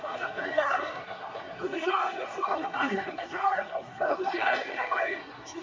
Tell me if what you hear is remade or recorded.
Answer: remade